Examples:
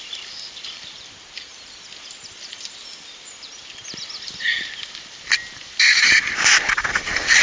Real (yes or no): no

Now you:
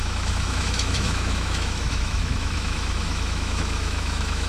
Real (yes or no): no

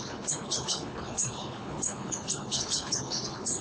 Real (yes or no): no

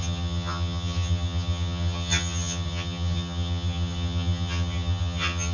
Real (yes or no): no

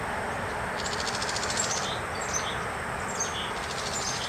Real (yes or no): yes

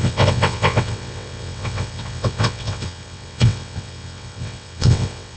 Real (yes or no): no